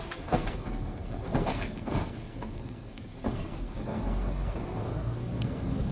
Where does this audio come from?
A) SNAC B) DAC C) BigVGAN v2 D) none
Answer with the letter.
A